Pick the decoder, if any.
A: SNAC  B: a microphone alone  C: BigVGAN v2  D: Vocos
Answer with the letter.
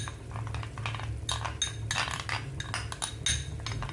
B